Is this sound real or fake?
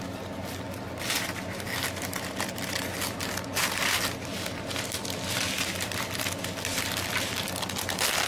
real